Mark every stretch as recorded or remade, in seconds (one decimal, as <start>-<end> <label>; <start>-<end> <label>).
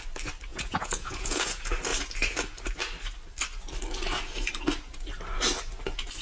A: 0.0-0.5 recorded; 0.5-1.5 remade; 1.5-6.2 recorded